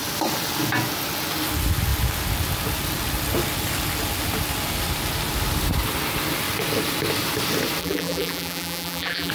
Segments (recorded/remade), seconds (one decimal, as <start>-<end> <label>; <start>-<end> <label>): 0.0-7.8 recorded; 7.8-9.3 remade